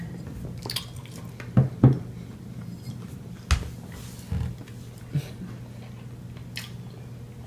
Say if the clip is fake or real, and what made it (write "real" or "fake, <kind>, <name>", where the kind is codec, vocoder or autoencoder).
real